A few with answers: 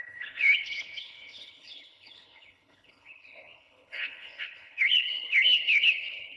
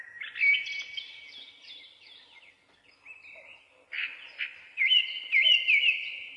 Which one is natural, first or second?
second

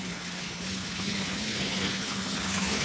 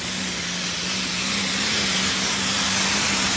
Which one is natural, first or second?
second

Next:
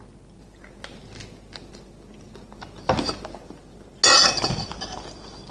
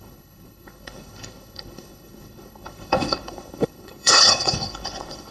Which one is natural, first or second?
first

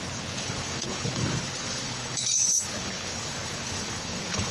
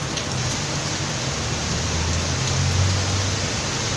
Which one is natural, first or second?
second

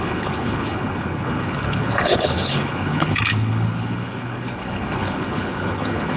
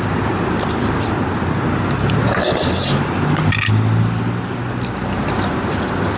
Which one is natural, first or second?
second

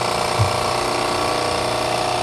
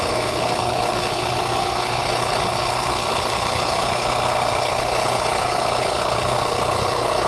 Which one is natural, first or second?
first